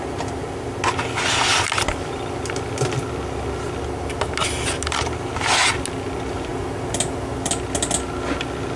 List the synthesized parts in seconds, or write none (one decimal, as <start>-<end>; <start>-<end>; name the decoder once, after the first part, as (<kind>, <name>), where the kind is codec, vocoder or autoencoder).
none